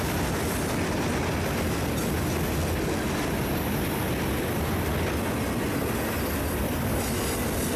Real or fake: real